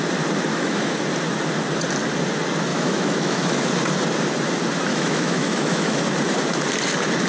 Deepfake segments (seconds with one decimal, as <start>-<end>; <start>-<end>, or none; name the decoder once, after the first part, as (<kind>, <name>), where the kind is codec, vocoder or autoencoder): 0.5-1.0 (autoencoder, DAC-VAE); 2.7-3.7; 4.9-6.0